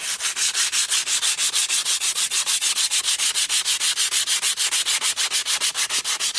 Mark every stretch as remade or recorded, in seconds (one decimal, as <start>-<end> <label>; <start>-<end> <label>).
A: 0.0-1.8 recorded; 1.8-3.0 remade; 3.0-6.4 recorded